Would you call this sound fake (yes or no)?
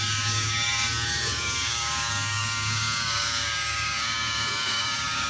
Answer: yes